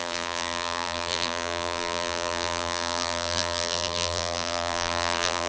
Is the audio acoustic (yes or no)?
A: no